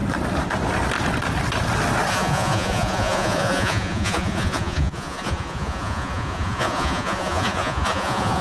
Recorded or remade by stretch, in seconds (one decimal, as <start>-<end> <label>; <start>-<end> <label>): 0.0-2.1 recorded; 2.1-8.4 remade